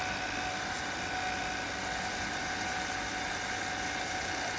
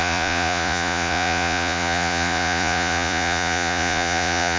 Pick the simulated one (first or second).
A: second